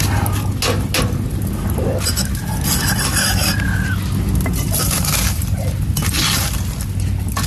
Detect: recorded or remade recorded